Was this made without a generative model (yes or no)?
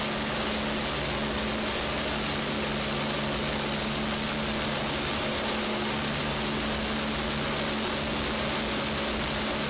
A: yes